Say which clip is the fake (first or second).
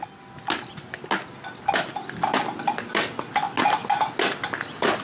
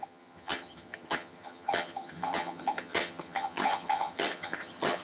second